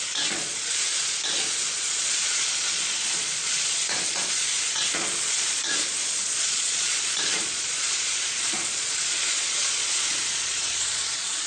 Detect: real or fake fake